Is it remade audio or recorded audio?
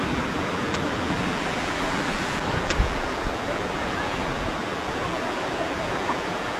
remade